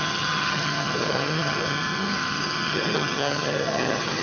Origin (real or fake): fake